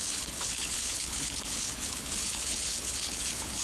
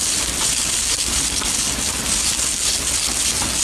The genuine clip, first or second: second